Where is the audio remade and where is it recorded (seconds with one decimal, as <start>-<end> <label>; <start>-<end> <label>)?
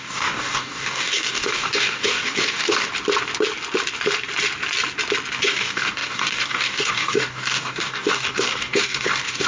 0.0-2.9 remade; 2.9-5.4 recorded; 5.4-9.5 remade